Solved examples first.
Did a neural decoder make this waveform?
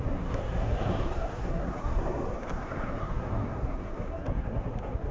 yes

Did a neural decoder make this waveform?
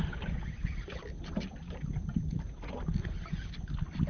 no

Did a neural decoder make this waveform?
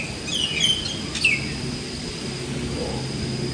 no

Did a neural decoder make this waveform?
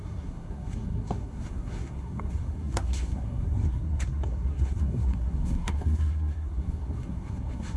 yes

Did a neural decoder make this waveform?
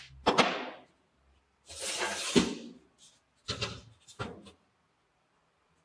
no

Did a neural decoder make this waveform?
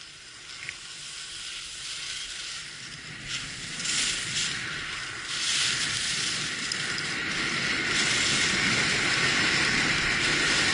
no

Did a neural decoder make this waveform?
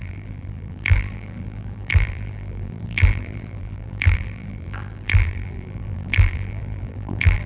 yes